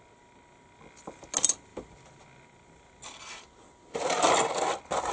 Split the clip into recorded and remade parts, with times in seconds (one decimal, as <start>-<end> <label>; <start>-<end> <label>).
0.0-5.1 recorded